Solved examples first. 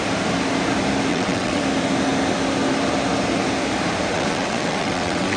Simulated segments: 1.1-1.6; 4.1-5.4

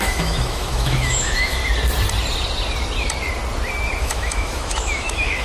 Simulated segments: 0.0-1.6; 4.0-5.4

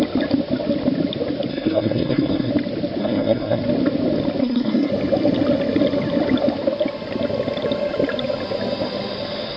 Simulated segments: 1.5-2.5; 3.0-3.6; 4.4-4.9

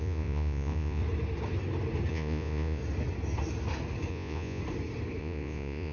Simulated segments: 0.0-1.0; 2.1-2.8; 4.1-4.6; 5.2-5.9

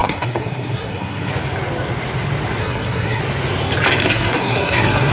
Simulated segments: 0.0-1.3; 2.6-3.2; 4.0-5.1